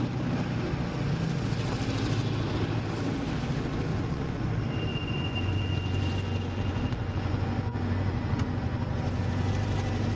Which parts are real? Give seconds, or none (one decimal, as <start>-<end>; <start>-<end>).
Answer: 0.0-3.9; 4.5-4.9; 9.5-10.2